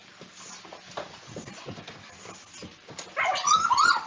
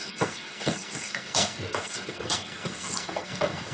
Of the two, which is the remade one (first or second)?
second